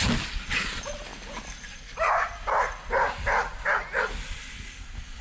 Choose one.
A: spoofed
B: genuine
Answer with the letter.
B